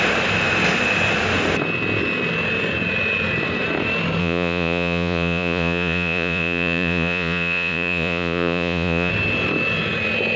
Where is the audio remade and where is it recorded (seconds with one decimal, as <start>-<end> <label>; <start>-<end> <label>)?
0.0-4.2 recorded; 4.2-9.1 remade; 9.1-10.4 recorded